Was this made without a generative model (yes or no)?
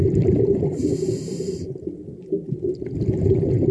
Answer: yes